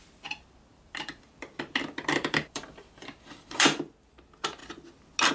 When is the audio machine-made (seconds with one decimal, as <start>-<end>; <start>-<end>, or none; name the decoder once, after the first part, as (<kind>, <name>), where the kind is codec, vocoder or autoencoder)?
0.7-3.9 (vocoder, BigVGAN v2)